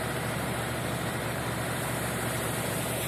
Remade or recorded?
remade